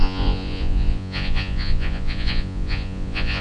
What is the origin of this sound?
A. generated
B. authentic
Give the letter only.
A